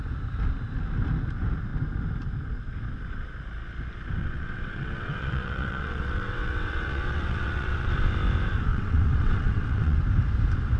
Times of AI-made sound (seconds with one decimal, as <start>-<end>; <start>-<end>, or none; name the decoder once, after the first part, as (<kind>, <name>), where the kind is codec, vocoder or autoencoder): 4.2-7.9 (vocoder, WaveNeXt); 8.7-10.0